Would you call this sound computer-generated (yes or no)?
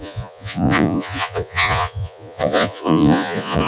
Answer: yes